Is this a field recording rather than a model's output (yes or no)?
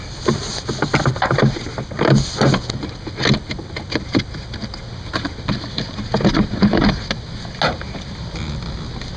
yes